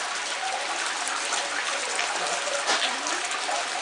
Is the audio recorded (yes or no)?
yes